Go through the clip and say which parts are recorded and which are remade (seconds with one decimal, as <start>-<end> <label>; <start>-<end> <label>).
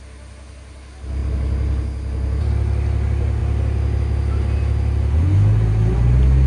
0.0-6.5 recorded